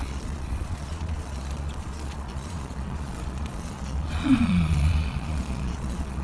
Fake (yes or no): yes